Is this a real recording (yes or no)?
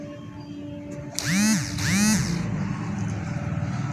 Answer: yes